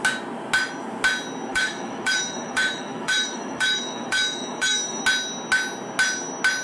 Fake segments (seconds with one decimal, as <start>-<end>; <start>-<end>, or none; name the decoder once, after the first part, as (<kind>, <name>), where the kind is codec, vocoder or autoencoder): 1.5-5.0 (autoencoder, DAC-VAE)